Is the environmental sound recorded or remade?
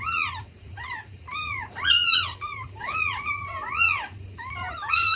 remade